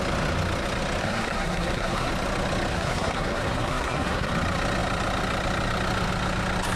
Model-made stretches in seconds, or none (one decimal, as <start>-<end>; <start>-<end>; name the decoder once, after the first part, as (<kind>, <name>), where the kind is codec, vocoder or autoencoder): 1.0-2.1 (codec, SNAC); 2.7-4.3